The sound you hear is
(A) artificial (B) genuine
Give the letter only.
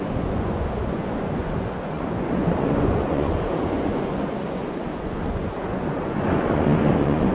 A